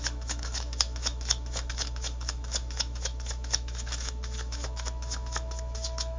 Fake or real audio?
fake